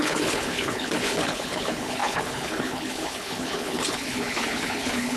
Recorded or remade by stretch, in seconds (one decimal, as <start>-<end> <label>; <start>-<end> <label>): 0.0-5.2 remade